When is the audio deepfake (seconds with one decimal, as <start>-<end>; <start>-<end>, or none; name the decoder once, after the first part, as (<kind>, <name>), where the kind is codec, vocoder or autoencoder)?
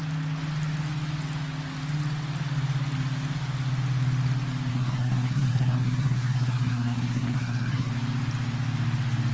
4.7-7.9 (codec, SNAC)